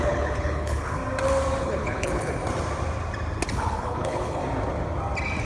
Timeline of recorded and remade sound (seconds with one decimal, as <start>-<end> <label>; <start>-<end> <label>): 0.0-1.0 remade; 1.0-1.6 recorded; 1.6-2.4 remade; 2.4-3.5 recorded; 3.5-4.4 remade; 4.4-5.4 recorded